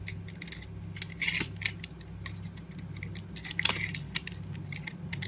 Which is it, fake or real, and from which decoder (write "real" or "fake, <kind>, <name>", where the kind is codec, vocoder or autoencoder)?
real